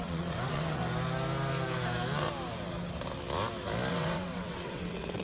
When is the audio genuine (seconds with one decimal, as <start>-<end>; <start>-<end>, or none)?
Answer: 0.8-3.9